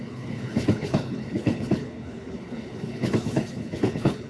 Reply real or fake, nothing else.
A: fake